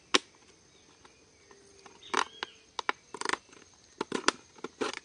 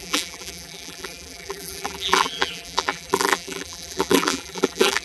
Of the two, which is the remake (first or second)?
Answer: second